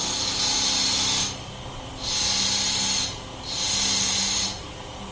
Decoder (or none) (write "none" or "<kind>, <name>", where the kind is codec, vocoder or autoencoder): none